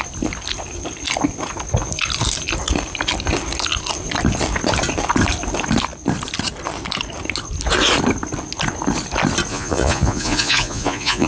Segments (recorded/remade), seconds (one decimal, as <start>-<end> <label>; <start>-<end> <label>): 0.0-9.5 recorded; 9.5-11.3 remade